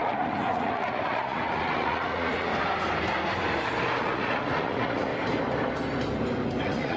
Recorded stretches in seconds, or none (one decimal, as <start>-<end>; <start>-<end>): 2.5-4.0; 5.1-6.6